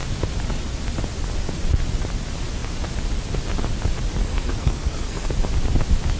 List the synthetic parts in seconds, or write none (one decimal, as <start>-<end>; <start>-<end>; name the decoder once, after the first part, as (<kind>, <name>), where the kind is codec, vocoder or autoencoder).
4.2-5.3 (codec, SNAC)